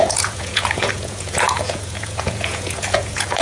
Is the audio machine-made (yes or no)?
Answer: yes